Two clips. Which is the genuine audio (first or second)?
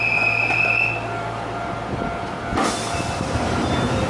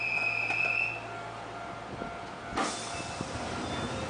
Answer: second